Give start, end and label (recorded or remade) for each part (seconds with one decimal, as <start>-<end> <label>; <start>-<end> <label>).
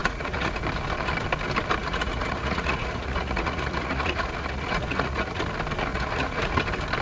0.0-0.5 remade; 0.5-1.8 recorded; 1.8-5.4 remade; 5.4-5.9 recorded; 5.9-6.6 remade; 6.6-7.0 recorded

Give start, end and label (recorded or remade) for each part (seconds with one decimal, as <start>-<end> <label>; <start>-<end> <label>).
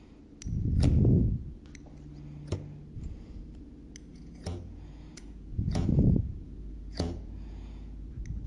0.0-4.1 recorded; 4.1-8.1 remade; 8.1-8.5 recorded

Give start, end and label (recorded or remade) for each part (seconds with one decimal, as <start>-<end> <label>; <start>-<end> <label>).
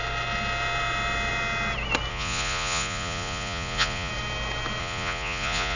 0.0-2.1 recorded; 2.1-4.1 remade; 4.1-4.8 recorded; 4.8-5.8 remade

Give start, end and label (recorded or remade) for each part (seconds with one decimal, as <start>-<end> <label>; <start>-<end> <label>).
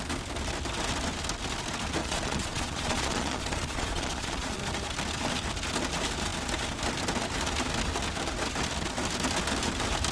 0.0-2.0 recorded; 2.0-4.6 remade; 4.6-10.1 recorded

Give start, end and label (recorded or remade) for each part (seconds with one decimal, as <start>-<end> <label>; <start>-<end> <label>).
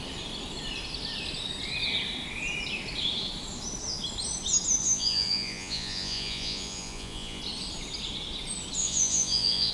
0.0-4.8 recorded; 4.8-7.4 remade; 7.4-8.8 recorded; 8.8-9.7 remade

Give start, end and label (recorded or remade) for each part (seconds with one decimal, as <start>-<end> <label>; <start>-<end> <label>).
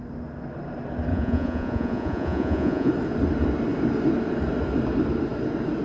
0.0-1.1 recorded; 1.1-2.9 remade; 2.9-5.8 recorded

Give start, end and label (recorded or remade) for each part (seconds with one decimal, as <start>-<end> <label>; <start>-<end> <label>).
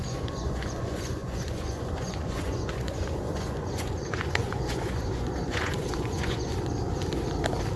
0.0-6.5 remade; 6.5-7.8 recorded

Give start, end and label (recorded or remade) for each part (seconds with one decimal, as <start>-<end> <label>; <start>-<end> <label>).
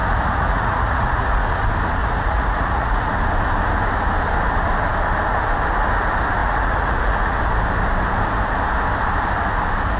0.0-1.6 remade; 1.6-2.0 recorded; 2.0-3.2 remade; 3.2-6.4 recorded; 6.4-7.4 remade; 7.4-10.0 recorded